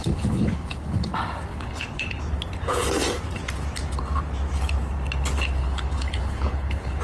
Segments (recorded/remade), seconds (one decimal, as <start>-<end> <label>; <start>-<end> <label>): 0.0-1.1 remade; 1.1-1.5 recorded; 1.5-2.2 remade; 2.2-5.6 recorded; 5.6-7.0 remade